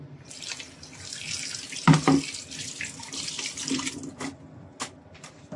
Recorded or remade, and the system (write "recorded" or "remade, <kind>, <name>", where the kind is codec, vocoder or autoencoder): recorded